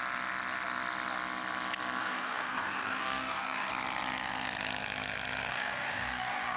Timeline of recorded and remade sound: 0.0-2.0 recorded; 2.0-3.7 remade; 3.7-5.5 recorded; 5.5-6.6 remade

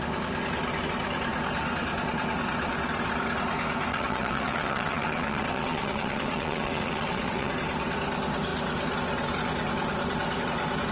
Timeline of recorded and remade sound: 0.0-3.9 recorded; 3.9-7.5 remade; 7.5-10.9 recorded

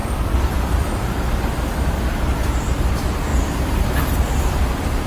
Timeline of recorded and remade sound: 0.0-2.9 remade; 2.9-3.3 recorded; 3.3-5.1 remade